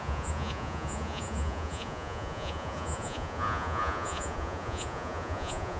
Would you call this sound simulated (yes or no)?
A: yes